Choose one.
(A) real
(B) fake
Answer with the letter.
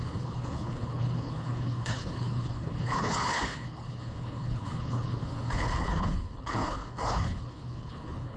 B